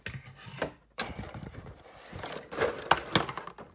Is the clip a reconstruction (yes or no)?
no